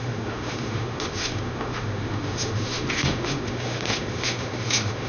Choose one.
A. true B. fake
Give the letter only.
B